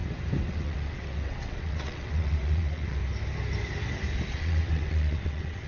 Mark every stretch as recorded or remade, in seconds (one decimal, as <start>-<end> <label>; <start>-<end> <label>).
0.0-0.5 recorded; 0.5-3.0 remade; 3.0-4.3 recorded; 4.3-5.7 remade